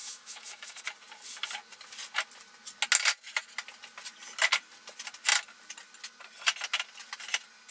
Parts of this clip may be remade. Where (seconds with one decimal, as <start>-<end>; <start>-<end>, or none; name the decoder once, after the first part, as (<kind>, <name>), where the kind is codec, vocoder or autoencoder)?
0.0-0.8 (autoencoder, DAC-VAE)